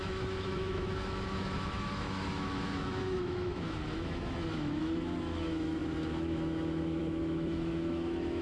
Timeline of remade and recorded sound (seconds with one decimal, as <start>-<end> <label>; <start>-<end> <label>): 0.0-8.4 remade